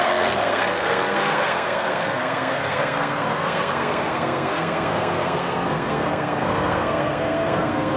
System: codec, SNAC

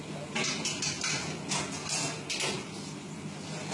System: none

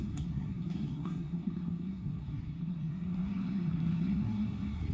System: codec, SNAC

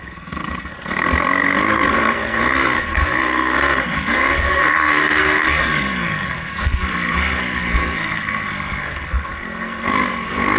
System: codec, SNAC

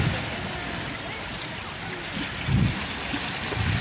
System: none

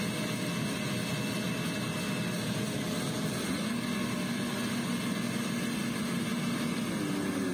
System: none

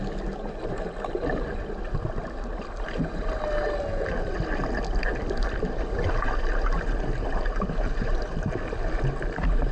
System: none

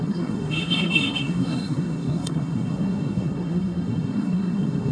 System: codec, SNAC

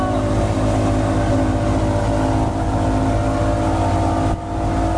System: none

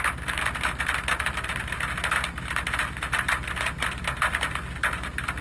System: none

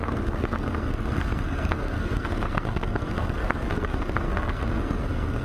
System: codec, SNAC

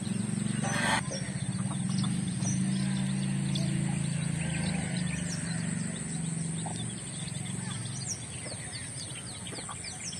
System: none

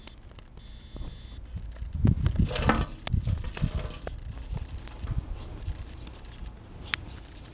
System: none